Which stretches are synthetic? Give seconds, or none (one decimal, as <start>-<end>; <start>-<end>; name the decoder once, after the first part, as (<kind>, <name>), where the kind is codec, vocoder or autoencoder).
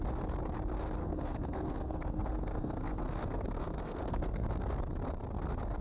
1.0-4.5 (codec, SNAC)